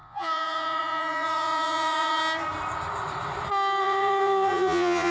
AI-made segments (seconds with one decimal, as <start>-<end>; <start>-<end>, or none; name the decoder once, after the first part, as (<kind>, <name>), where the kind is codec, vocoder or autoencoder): 0.0-2.2 (vocoder, Vocos); 3.8-5.1